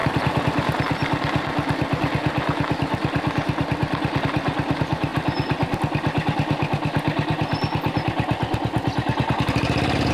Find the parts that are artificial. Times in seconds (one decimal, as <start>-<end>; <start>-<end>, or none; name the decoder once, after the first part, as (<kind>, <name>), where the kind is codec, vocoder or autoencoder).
none